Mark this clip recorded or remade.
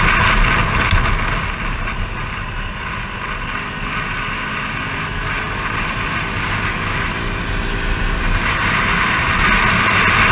recorded